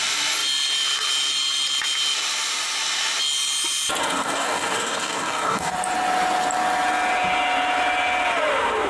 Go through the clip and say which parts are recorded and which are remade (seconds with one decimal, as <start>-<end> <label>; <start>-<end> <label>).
0.0-4.0 recorded; 4.0-5.7 remade; 5.7-8.9 recorded